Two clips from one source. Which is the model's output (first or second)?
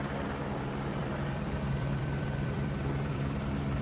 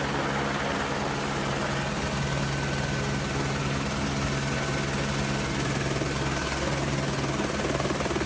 first